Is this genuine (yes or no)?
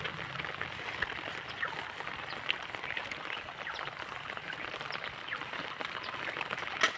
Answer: yes